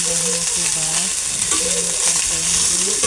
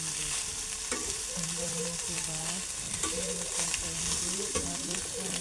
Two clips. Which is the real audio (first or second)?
first